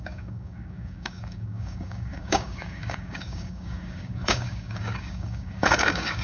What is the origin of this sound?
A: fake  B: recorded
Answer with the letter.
A